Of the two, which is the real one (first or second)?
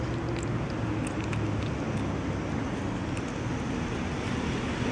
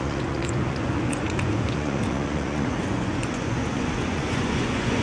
first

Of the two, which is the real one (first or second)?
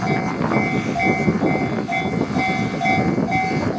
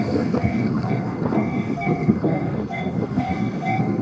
first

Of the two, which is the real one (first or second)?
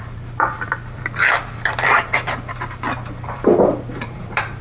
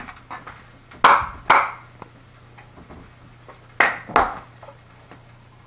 second